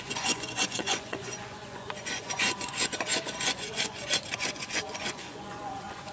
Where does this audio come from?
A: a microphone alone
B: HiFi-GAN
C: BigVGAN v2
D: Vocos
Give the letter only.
D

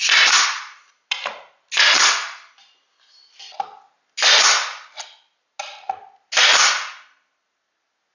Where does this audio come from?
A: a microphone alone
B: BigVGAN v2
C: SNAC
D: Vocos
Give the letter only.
A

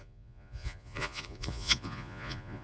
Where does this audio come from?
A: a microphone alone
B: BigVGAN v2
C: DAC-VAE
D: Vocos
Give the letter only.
D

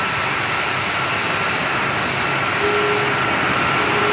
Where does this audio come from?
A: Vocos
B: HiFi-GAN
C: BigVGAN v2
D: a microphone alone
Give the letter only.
D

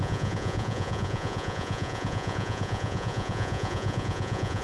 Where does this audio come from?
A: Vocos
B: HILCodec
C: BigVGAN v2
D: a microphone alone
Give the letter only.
A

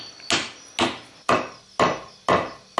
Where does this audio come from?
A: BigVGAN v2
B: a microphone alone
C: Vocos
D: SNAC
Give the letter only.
B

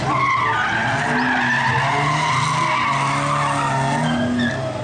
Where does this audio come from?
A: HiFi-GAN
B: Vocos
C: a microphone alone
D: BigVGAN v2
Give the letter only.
C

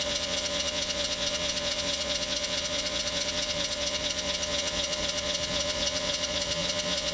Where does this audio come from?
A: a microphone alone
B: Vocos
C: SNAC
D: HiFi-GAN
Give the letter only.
B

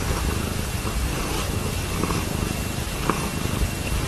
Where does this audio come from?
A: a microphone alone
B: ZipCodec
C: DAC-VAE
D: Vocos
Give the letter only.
A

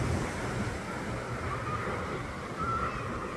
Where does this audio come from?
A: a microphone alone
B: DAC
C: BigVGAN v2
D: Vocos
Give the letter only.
A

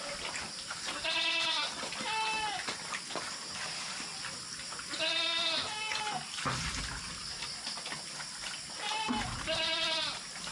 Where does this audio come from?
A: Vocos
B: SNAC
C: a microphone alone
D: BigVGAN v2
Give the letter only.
C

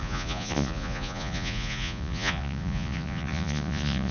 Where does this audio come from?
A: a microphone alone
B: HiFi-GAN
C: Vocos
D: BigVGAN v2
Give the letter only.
C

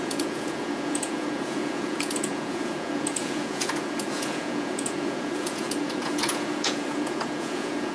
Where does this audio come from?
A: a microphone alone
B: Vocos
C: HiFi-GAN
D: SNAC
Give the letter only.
B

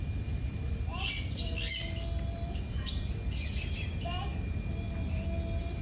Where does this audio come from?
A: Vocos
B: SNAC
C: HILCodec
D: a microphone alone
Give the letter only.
D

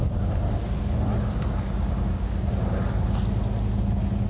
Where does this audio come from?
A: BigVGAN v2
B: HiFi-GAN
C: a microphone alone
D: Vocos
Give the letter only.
C